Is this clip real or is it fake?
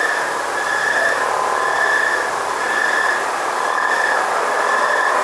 real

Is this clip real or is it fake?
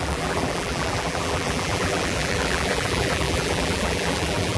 fake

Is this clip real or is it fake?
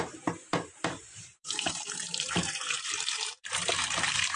fake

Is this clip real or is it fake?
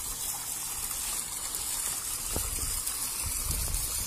real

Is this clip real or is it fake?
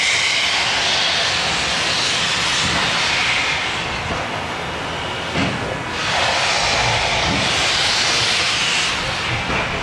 real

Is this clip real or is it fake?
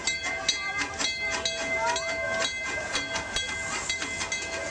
real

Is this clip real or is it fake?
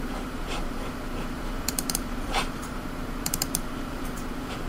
fake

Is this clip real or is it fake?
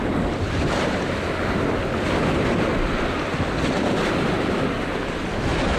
real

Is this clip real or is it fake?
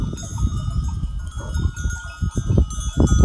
real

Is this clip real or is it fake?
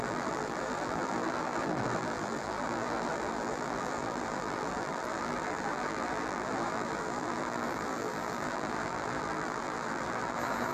fake